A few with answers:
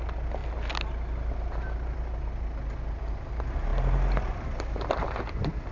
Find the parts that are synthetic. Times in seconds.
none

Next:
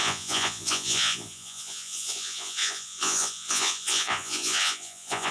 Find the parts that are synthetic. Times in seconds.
0.0-5.3 (vocoder, Vocos)

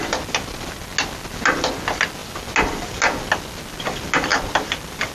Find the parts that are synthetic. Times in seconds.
4.3-5.1 (vocoder, BigVGAN v2)